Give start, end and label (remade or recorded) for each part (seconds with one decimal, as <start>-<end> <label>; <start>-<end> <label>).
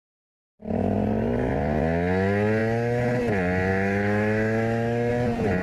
0.0-3.7 recorded; 3.7-5.1 remade; 5.1-5.6 recorded